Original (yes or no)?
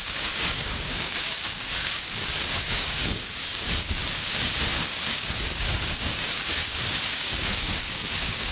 no